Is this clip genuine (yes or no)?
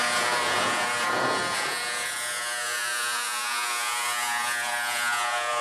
no